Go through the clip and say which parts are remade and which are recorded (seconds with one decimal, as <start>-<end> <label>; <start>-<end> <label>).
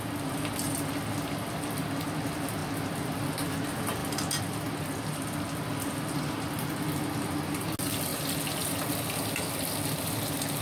0.0-10.6 recorded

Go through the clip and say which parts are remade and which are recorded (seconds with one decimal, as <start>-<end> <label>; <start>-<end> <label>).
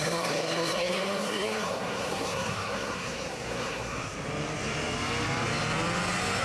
0.0-4.1 remade; 4.1-6.4 recorded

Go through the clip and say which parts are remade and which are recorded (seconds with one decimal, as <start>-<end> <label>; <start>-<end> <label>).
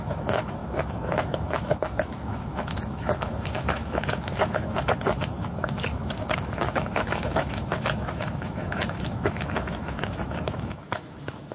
0.0-11.5 remade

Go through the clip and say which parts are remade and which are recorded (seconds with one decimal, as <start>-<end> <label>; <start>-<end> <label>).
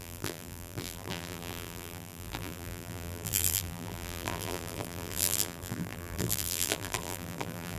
0.0-7.8 remade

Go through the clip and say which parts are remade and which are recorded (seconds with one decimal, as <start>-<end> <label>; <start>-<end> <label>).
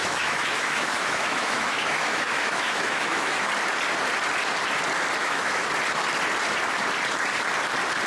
0.0-3.5 remade; 3.5-5.2 recorded; 5.2-5.7 remade; 5.7-8.1 recorded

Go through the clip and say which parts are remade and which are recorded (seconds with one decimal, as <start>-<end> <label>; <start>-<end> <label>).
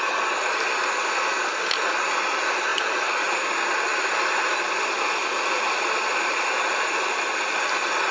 0.0-8.1 recorded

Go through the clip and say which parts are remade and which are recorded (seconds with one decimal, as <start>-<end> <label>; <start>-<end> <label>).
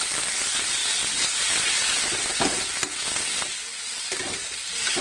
0.0-5.0 recorded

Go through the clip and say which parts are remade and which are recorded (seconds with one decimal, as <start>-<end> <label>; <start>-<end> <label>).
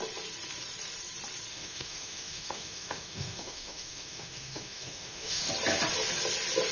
0.0-1.5 recorded; 1.5-5.5 remade; 5.5-6.7 recorded